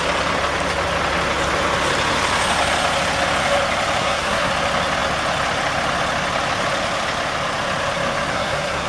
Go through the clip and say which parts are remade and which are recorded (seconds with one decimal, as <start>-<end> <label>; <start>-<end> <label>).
0.0-4.0 recorded; 4.0-4.5 remade; 4.5-8.3 recorded; 8.3-8.9 remade